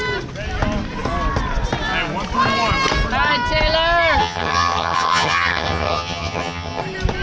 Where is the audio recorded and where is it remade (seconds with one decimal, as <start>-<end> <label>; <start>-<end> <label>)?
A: 0.0-4.2 recorded; 4.2-6.8 remade; 6.8-7.2 recorded